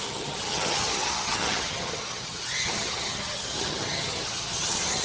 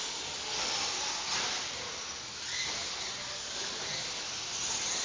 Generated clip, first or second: first